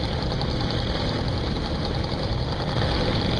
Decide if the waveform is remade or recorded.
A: recorded